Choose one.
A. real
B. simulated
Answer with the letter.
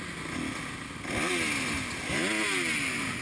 A